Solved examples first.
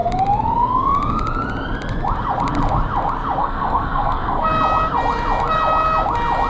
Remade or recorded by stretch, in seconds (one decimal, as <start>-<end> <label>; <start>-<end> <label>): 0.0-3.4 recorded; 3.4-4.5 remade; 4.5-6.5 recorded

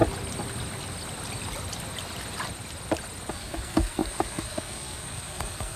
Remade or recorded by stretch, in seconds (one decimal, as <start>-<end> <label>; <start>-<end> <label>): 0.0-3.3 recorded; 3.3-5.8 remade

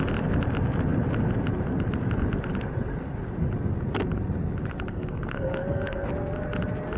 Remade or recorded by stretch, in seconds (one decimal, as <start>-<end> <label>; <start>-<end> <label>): 0.0-4.9 recorded; 4.9-6.1 remade; 6.1-7.0 recorded